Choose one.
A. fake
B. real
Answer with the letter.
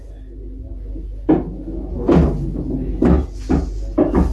B